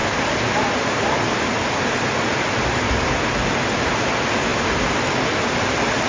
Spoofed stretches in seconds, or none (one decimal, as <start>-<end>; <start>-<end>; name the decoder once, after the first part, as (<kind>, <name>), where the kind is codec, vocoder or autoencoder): none

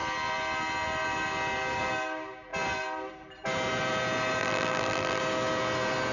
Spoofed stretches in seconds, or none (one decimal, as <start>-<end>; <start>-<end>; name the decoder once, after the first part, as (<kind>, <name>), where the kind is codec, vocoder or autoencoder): 4.4-5.2 (vocoder, BigVGAN v2)

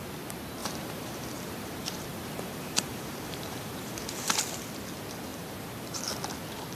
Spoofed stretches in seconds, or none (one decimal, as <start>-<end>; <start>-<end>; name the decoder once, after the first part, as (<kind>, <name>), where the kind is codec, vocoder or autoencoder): 0.6-4.3 (vocoder, BigVGAN v2); 5.3-6.0

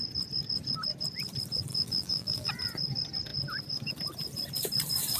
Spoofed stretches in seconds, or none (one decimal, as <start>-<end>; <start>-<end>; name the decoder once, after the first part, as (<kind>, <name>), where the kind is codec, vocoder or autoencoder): 1.7-2.5 (vocoder, BigVGAN v2)

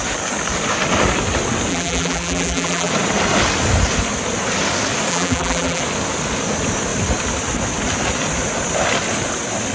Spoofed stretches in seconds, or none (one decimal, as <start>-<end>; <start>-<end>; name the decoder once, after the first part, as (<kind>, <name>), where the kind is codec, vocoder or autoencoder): 1.7-2.9 (vocoder, BigVGAN v2); 5.1-5.8

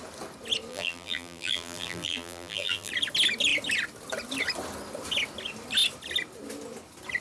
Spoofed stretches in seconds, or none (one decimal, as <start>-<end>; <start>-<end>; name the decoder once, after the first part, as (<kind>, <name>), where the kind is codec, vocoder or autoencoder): 0.7-2.9 (vocoder, BigVGAN v2)

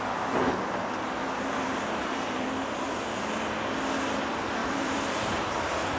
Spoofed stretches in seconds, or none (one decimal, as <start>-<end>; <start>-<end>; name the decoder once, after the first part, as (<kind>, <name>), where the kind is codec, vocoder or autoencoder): 1.2-3.3 (vocoder, BigVGAN v2); 4.6-5.4

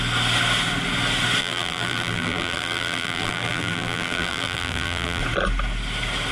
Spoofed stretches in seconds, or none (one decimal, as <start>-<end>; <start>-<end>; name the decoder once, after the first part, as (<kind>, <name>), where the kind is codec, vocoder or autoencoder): 1.4-5.2 (vocoder, BigVGAN v2)